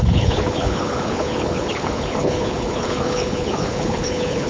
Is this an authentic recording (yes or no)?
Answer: no